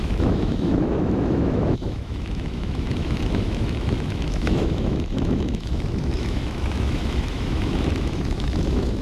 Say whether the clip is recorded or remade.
remade